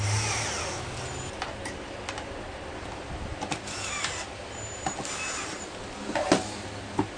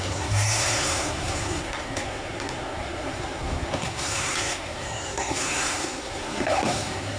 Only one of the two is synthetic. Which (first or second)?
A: second